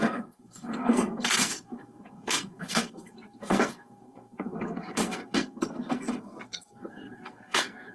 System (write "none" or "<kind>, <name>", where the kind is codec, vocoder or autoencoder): codec, SNAC